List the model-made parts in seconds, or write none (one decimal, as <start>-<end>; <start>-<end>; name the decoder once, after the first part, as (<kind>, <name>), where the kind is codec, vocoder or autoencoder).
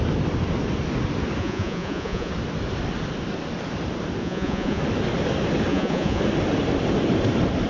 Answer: 1.4-2.3 (vocoder, Vocos); 4.2-4.8; 5.7-6.2